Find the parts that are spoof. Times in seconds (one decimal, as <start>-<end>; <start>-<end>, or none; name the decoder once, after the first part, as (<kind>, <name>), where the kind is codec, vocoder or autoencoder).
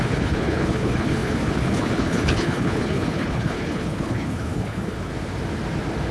0.0-5.1 (codec, HILCodec)